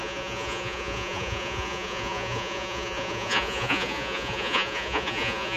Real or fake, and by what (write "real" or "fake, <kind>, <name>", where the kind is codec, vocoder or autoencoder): fake, vocoder, Vocos